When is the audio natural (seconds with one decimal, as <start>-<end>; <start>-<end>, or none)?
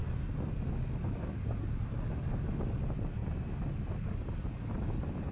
0.0-5.3